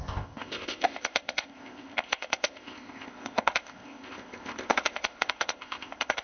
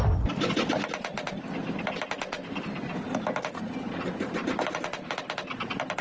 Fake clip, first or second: first